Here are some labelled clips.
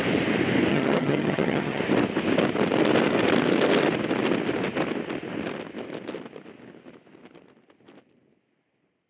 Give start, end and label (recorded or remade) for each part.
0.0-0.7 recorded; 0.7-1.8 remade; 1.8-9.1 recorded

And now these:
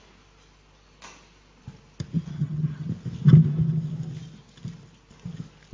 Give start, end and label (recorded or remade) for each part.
0.0-2.3 recorded; 2.3-2.9 remade; 2.9-5.7 recorded